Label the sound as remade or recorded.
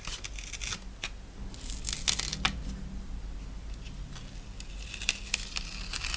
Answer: recorded